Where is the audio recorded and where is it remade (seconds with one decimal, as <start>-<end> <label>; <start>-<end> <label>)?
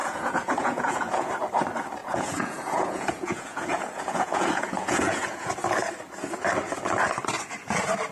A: 0.0-1.3 remade; 1.3-2.0 recorded; 2.0-5.5 remade; 5.5-8.1 recorded